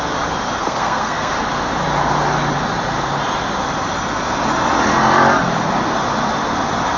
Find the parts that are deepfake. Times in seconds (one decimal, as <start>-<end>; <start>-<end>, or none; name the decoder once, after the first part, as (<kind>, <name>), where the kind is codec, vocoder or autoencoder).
0.6-1.3 (codec, SNAC)

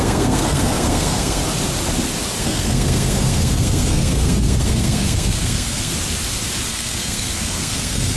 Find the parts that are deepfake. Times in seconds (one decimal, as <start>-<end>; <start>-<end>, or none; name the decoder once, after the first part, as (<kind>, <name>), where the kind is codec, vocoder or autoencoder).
0.0-1.4 (codec, SNAC); 2.4-5.9; 6.7-8.2

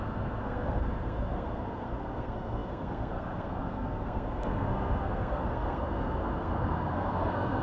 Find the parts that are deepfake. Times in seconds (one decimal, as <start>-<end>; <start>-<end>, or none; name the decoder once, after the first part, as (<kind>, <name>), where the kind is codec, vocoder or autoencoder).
0.0-7.6 (codec, SNAC)

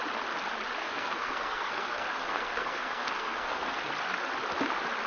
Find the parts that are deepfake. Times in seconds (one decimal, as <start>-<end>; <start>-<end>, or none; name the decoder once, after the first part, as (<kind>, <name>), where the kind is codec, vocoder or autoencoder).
0.8-3.9 (codec, SNAC)

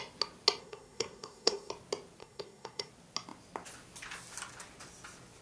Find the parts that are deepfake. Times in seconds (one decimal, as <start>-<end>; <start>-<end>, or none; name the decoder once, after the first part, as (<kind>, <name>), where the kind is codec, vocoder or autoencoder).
0.6-1.7 (codec, SNAC); 2.2-2.9